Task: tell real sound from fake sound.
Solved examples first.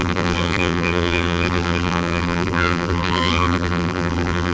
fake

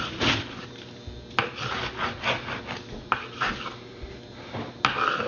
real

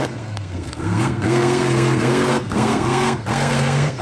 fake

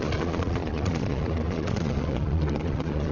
fake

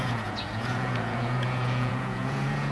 fake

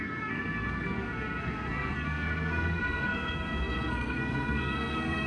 fake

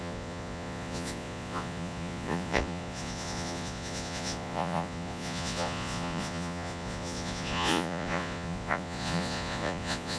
fake